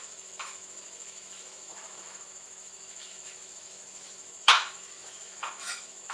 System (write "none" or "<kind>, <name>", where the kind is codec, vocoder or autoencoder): autoencoder, DAC-VAE